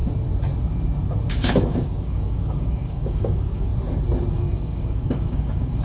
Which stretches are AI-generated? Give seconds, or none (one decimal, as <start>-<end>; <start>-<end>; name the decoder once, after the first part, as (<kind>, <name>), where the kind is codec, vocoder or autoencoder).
1.3-3.7 (codec, DAC); 4.3-5.8